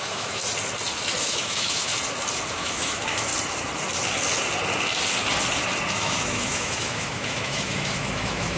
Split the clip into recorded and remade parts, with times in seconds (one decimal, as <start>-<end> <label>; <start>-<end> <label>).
0.0-0.4 remade; 0.4-1.2 recorded; 1.2-1.9 remade; 1.9-2.5 recorded; 2.5-3.3 remade; 3.3-5.9 recorded; 5.9-8.6 remade